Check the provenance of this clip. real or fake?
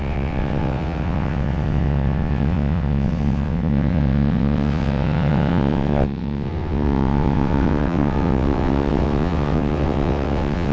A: fake